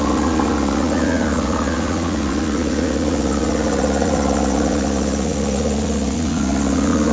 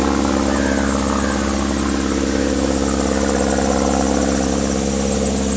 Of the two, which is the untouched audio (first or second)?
second